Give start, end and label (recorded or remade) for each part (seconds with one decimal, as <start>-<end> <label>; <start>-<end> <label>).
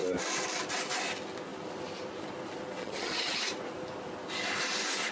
0.0-2.8 recorded; 2.8-3.4 remade; 3.4-5.1 recorded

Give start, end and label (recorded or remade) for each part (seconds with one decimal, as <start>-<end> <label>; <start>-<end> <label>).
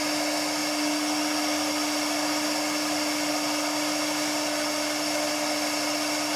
0.0-6.4 recorded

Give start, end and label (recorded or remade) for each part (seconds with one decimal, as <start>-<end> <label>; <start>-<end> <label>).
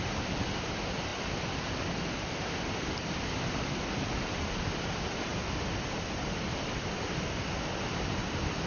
0.0-8.7 recorded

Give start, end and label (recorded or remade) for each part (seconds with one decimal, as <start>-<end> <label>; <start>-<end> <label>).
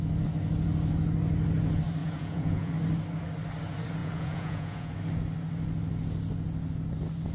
0.0-2.0 recorded; 2.0-2.7 remade; 2.7-4.0 recorded; 4.0-4.9 remade; 4.9-7.3 recorded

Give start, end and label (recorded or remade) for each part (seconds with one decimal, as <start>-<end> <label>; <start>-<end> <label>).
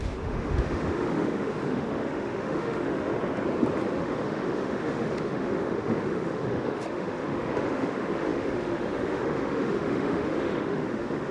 0.0-3.1 remade; 3.1-4.0 recorded; 4.0-11.3 remade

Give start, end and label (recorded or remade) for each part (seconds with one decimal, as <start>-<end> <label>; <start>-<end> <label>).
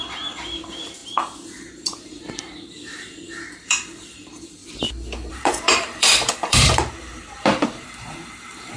0.0-1.0 remade; 1.0-1.7 recorded; 1.7-4.6 remade; 4.6-5.3 recorded; 5.3-8.8 remade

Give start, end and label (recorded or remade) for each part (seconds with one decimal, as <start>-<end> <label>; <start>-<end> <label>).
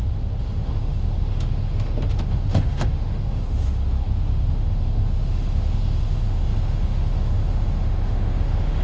0.0-8.8 remade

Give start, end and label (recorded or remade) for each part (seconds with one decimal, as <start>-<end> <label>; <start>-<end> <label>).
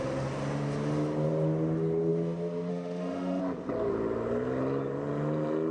0.0-2.7 recorded; 2.7-3.4 remade; 3.4-5.7 recorded